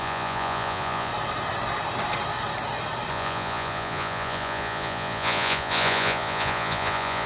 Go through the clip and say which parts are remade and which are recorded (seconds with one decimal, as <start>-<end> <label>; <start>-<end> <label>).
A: 0.0-1.1 remade; 1.1-3.1 recorded; 3.1-7.3 remade